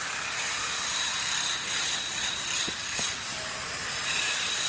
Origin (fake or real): real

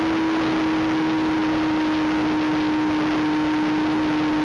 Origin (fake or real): real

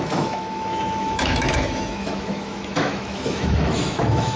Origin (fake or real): fake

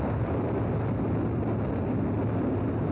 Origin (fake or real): real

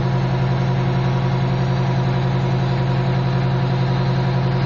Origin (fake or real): real